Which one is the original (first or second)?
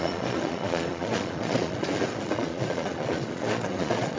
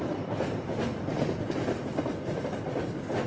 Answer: second